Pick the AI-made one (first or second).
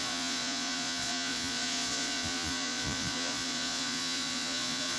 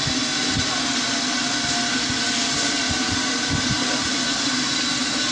first